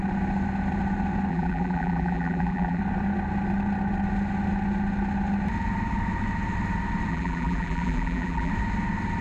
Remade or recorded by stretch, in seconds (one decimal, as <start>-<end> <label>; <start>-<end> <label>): 0.0-1.3 recorded; 1.3-2.8 remade; 2.8-7.1 recorded; 7.1-8.5 remade; 8.5-9.2 recorded